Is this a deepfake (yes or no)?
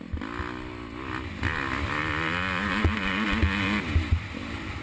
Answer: no